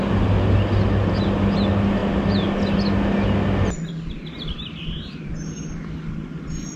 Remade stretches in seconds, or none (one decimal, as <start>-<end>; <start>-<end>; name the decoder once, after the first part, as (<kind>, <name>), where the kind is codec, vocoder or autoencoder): none

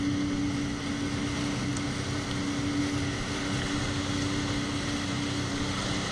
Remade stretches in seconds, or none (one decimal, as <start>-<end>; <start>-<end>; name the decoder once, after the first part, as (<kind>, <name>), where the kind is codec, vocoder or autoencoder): none

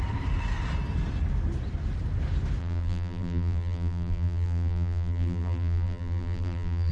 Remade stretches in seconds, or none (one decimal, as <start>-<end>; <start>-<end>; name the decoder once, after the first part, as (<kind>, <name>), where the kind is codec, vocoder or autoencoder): 2.6-6.9 (vocoder, BigVGAN v2)

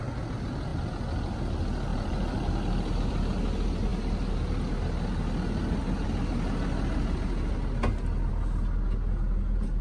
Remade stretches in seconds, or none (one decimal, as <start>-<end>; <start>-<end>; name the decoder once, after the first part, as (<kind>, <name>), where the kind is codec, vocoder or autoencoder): 1.9-2.5 (vocoder, BigVGAN v2)

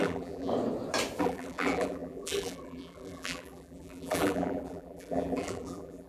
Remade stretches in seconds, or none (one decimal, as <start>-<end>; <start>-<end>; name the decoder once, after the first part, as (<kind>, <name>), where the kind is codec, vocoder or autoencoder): 0.0-0.5 (vocoder, BigVGAN v2); 1.2-6.1